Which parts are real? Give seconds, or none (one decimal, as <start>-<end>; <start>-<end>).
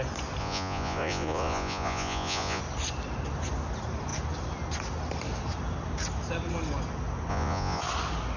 0.0-0.4; 2.6-7.3; 7.8-8.4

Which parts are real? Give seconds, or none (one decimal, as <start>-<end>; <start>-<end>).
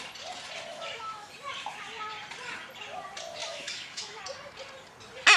0.0-0.7; 1.3-3.4; 4.2-5.4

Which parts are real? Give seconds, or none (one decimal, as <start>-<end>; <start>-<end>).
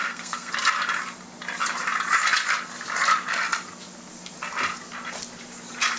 0.5-6.0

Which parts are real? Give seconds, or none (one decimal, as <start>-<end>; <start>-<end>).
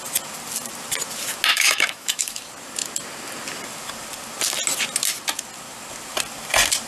0.0-1.5; 2.4-6.9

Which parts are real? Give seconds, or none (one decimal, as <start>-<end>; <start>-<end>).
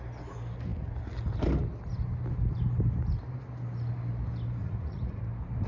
0.0-4.6; 5.2-5.7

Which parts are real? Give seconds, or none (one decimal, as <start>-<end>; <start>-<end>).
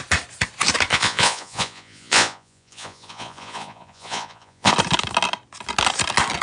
0.0-0.9; 4.7-6.4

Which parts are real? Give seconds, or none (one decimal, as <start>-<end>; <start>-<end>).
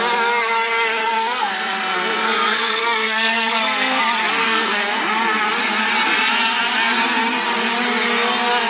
0.0-1.0; 4.0-4.4; 5.1-8.7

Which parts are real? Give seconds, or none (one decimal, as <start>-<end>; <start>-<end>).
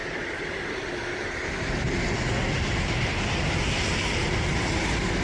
0.0-5.2